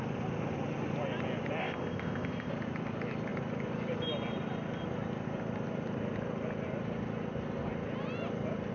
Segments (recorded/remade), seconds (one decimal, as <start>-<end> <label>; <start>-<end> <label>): 0.0-1.6 recorded; 1.6-2.5 remade; 2.5-8.7 recorded